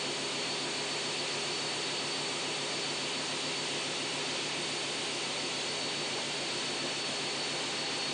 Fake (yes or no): no